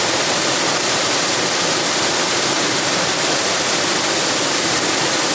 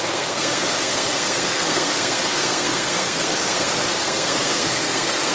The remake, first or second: second